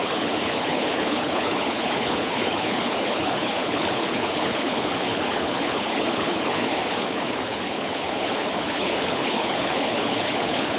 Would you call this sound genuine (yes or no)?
no